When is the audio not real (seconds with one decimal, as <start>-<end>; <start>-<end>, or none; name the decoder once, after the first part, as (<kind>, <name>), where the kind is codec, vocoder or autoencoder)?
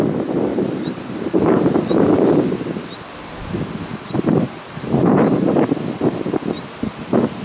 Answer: 0.5-2.1 (vocoder, BigVGAN v2); 3.9-5.5